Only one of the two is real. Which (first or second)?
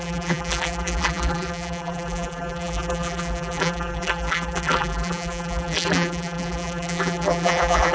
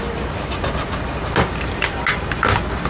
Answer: second